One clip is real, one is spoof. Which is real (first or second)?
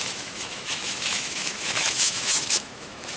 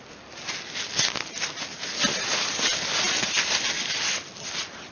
second